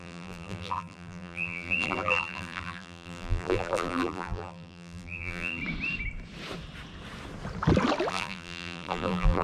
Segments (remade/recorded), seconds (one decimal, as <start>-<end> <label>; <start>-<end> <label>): 0.0-5.6 remade; 5.6-8.1 recorded; 8.1-9.4 remade